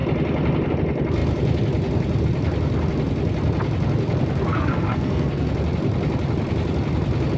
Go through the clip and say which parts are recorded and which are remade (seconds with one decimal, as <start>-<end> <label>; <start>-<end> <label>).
0.0-4.5 recorded; 4.5-5.5 remade; 5.5-7.4 recorded